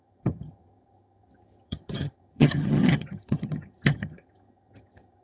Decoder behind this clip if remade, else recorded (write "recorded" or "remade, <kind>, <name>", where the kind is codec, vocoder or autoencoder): remade, vocoder, HiFi-GAN